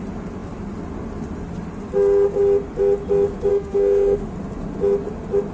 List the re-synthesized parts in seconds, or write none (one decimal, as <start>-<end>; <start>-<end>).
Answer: 3.5-4.3